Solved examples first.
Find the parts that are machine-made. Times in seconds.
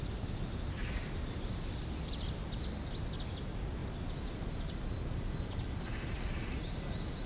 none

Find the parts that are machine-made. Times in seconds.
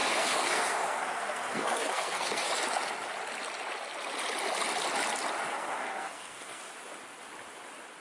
0.0-2.5 (codec, SNAC); 5.5-6.6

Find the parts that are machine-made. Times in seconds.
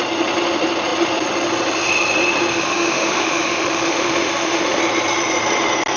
2.5-4.8 (autoencoder, DAC-VAE)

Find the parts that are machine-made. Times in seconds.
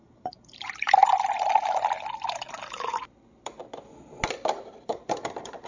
0.0-1.0 (vocoder, BigVGAN v2); 2.8-3.6; 4.3-5.7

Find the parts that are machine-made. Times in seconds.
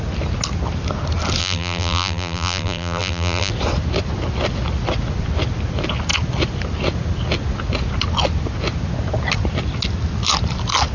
1.4-3.5 (vocoder, BigVGAN v2)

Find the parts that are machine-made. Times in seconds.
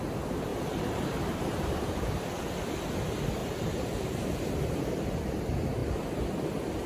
0.5-2.2 (vocoder, BigVGAN v2); 3.4-4.5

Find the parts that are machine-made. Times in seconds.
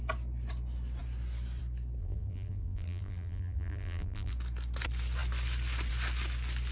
2.0-4.3 (vocoder, BigVGAN v2)